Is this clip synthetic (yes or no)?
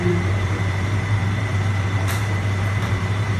yes